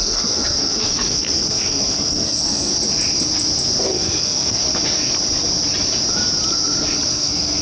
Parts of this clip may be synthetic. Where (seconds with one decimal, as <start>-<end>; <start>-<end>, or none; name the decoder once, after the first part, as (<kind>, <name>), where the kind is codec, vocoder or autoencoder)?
0.0-2.7 (codec, SNAC); 3.8-4.6; 7.1-7.6